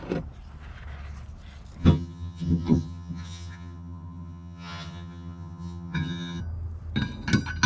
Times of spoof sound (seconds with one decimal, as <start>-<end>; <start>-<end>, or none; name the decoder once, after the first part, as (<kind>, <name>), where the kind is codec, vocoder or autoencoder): 1.8-6.4 (vocoder, HiFi-GAN)